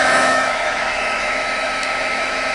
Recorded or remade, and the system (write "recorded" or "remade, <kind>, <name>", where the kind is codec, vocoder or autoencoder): remade, autoencoder, DAC-VAE